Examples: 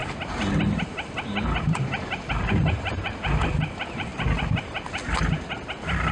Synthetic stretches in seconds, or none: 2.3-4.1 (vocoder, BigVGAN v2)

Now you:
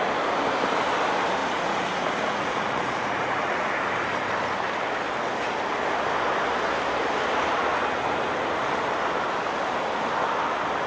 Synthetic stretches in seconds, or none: 1.4-3.7 (vocoder, Vocos)